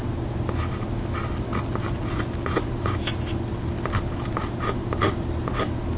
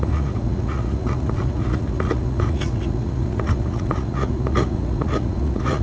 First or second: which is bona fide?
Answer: first